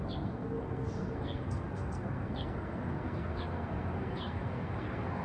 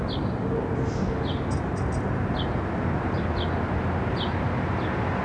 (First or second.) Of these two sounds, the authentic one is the second